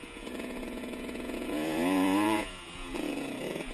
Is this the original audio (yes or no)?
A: no